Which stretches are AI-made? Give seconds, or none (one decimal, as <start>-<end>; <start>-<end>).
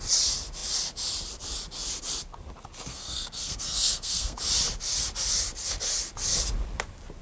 2.9-4.4